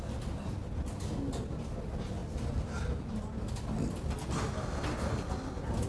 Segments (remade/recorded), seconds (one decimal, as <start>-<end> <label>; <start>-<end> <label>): 0.0-5.9 recorded